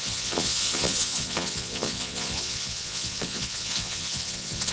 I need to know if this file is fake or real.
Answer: fake